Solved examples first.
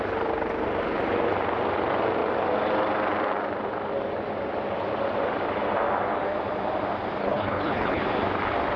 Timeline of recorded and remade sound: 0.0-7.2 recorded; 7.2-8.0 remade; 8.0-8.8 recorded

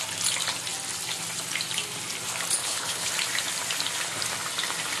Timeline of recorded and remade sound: 0.0-2.6 recorded; 2.6-3.1 remade; 3.1-5.0 recorded